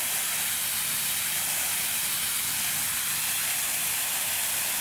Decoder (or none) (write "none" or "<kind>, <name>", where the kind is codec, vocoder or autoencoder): none